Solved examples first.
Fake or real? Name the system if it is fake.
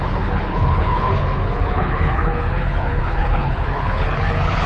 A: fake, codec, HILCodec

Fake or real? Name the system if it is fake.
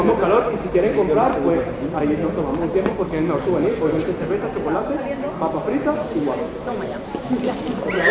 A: real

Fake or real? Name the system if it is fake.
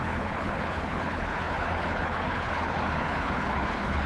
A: fake, codec, HILCodec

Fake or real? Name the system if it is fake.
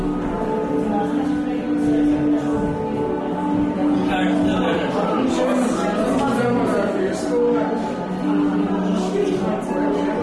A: real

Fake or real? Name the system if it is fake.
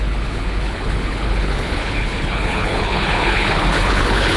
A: fake, codec, HILCodec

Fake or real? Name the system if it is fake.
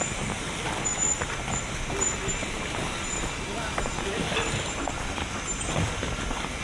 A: real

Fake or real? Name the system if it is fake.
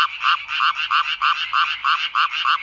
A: real